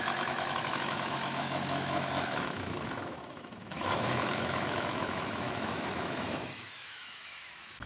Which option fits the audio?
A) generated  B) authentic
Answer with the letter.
A